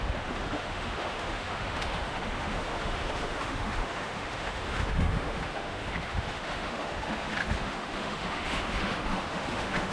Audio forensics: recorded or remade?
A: remade